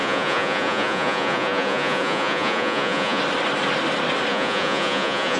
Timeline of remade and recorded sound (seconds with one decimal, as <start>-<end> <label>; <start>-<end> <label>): 0.0-3.2 remade; 3.2-4.3 recorded; 4.3-5.4 remade